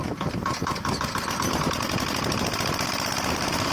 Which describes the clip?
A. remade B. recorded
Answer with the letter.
A